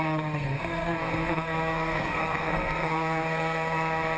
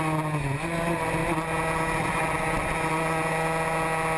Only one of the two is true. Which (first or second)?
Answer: second